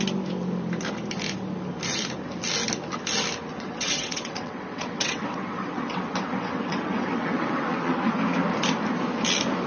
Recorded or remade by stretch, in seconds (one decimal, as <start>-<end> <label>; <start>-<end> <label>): 0.0-3.5 recorded; 3.5-8.1 remade; 8.1-9.7 recorded